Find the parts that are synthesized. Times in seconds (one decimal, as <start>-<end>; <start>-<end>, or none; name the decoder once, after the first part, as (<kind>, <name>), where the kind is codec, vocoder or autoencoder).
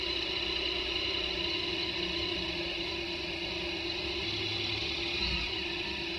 none